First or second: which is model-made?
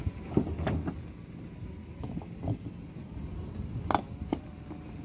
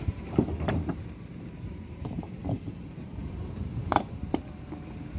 second